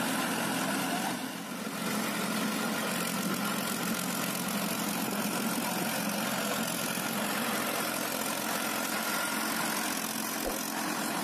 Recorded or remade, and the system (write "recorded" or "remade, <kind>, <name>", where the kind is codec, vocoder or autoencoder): recorded